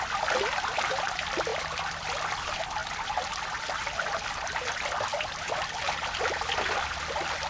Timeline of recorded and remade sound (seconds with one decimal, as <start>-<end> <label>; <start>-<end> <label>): 0.0-7.5 recorded